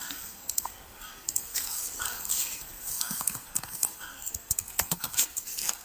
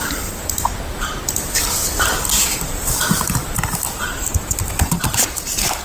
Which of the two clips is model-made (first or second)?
first